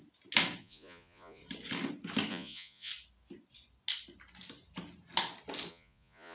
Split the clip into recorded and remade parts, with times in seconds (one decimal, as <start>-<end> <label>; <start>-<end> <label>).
0.0-0.6 recorded; 0.6-1.4 remade; 1.4-2.3 recorded; 2.3-2.9 remade; 2.9-5.7 recorded; 5.7-6.3 remade